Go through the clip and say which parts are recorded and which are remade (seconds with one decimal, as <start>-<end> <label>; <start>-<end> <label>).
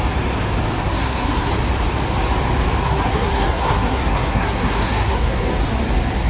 0.0-0.8 recorded; 0.8-1.5 remade; 1.5-2.8 recorded; 2.8-5.4 remade; 5.4-6.3 recorded